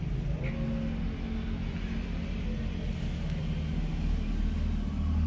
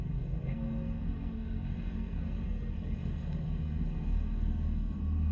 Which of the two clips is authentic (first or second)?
first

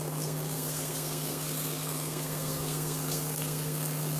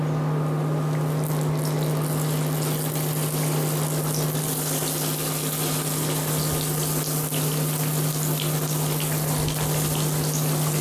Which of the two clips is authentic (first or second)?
second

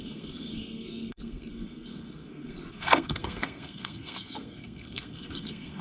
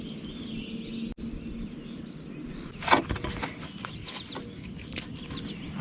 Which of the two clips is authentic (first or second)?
second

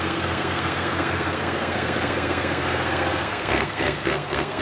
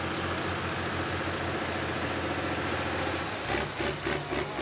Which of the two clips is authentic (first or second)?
second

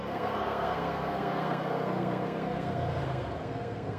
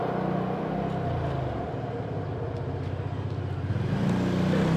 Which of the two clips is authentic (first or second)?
second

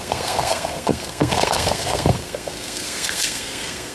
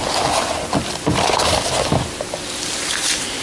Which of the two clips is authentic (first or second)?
second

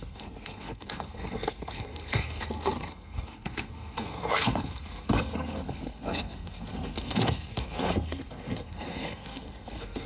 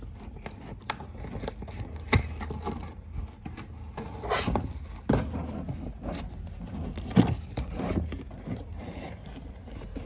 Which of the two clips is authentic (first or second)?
second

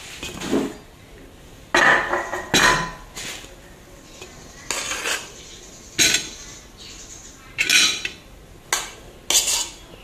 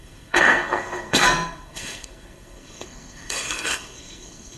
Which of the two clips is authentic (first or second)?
first